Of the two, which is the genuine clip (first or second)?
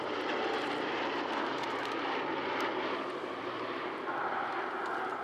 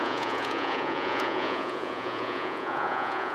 first